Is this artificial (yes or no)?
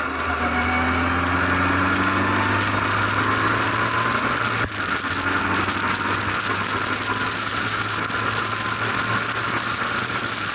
no